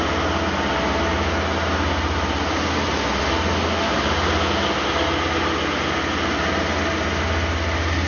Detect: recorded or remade recorded